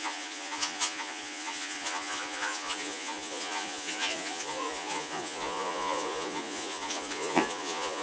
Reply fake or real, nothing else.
fake